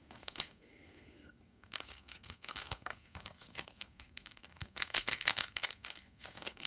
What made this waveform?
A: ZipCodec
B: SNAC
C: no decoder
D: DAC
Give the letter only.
B